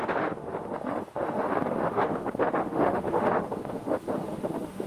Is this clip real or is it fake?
fake